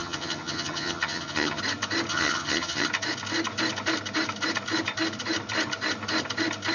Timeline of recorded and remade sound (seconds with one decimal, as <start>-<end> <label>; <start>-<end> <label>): 0.0-1.6 remade; 1.6-2.1 recorded; 2.1-2.9 remade; 2.9-6.7 recorded